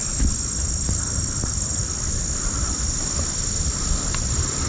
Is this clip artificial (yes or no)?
no